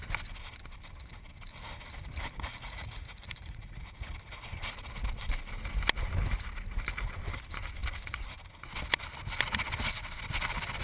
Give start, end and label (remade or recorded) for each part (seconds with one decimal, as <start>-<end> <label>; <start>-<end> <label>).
0.0-2.5 recorded; 2.5-3.8 remade; 3.8-10.8 recorded